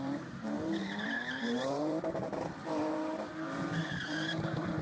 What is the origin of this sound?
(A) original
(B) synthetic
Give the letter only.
B